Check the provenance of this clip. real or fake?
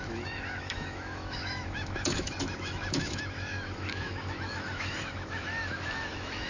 fake